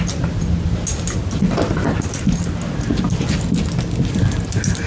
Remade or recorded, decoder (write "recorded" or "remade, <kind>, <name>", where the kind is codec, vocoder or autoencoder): recorded